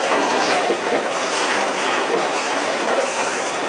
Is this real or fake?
fake